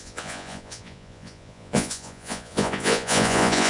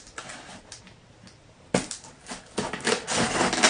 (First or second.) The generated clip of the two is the first